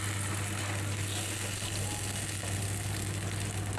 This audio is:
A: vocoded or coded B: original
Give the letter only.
B